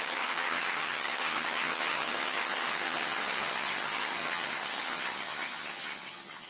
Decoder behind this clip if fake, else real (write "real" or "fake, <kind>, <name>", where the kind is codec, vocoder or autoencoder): fake, vocoder, HiFi-GAN